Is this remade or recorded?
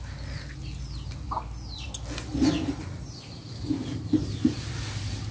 recorded